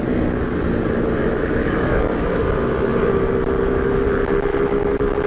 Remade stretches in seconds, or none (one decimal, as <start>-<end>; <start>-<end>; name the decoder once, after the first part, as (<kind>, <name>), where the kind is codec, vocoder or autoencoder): 1.6-2.4 (codec, DAC)

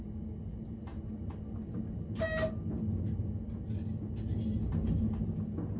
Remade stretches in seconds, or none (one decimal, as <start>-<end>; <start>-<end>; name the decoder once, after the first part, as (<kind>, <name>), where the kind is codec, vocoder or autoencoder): none

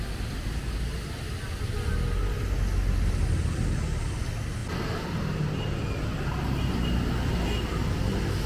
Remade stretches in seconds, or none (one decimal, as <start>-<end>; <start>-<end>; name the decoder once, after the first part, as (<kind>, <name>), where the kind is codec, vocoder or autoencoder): none

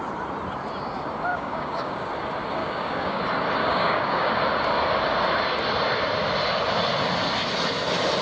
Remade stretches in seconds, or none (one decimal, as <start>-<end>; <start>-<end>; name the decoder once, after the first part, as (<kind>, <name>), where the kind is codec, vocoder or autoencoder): 1.3-2.1 (codec, DAC); 2.6-3.2; 3.6-4.3

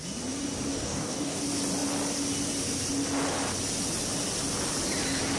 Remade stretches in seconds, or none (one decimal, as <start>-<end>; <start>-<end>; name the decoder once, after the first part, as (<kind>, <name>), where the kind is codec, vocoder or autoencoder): 0.7-1.4 (codec, DAC)

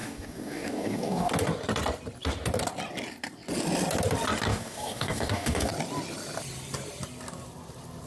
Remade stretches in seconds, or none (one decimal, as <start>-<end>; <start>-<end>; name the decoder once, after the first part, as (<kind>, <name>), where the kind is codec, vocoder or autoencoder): 0.0-1.3 (codec, DAC); 4.5-5.7